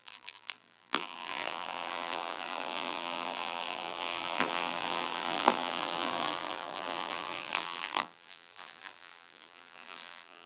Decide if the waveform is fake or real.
fake